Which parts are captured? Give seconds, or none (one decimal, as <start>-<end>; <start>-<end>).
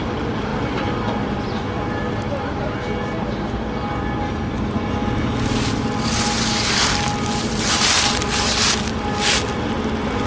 0.0-10.3